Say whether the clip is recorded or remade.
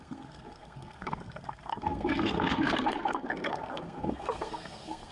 remade